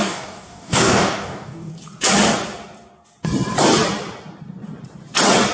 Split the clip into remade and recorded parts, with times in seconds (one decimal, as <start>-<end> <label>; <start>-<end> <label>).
0.0-1.7 remade; 1.7-5.5 recorded